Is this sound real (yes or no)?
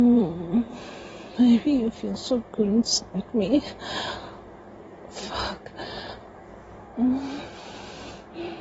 no